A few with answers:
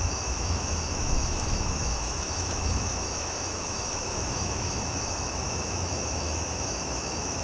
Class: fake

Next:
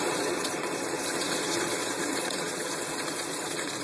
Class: fake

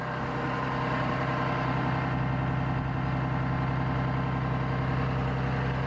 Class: real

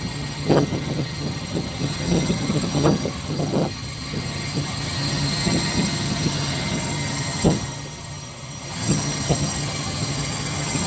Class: fake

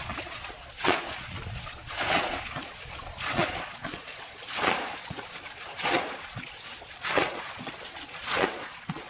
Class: fake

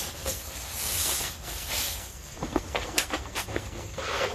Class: fake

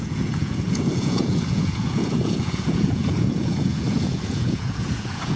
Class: fake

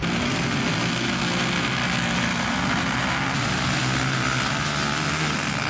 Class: real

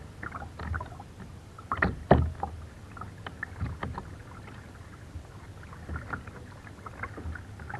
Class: real